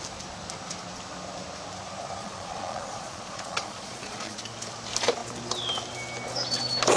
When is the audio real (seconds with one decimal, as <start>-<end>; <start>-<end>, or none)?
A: 0.0-2.2; 4.4-7.0